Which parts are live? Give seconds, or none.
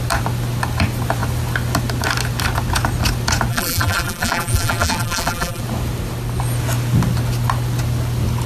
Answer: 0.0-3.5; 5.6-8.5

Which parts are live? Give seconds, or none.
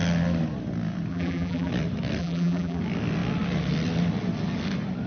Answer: 0.0-1.1; 1.7-2.2; 2.8-5.1